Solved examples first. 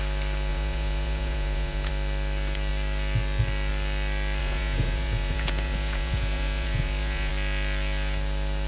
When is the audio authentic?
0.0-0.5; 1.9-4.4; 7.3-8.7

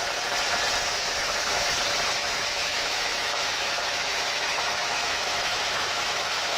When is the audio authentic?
0.0-0.8; 1.5-2.2

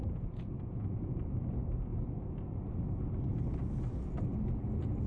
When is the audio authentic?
1.1-5.1

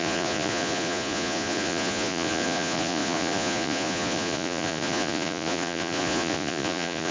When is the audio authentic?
none